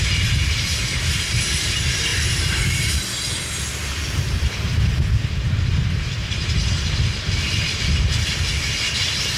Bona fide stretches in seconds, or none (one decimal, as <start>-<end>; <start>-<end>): 0.0-2.1; 3.0-3.8; 5.7-6.2; 8.4-9.4